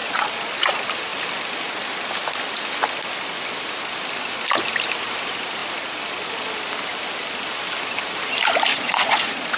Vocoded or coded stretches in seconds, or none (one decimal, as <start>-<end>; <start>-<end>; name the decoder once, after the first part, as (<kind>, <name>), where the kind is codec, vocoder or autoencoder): 0.0-0.5 (vocoder, Vocos); 8.7-9.6